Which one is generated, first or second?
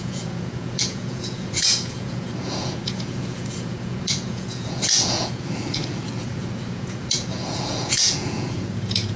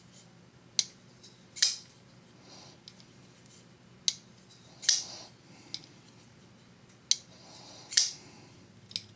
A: first